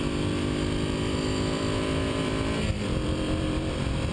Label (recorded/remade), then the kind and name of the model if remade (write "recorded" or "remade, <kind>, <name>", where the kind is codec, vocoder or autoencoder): remade, vocoder, BigVGAN v2